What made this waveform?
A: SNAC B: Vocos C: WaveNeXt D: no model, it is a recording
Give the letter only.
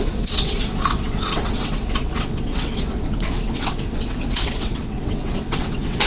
C